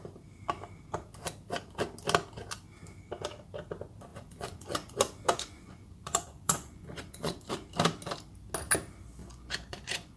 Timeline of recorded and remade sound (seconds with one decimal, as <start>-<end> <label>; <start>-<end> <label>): 0.0-4.1 recorded; 4.1-7.5 remade; 7.5-9.2 recorded; 9.2-10.2 remade